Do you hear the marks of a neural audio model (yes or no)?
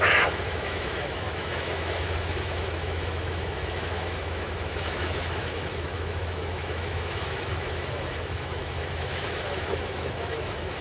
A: yes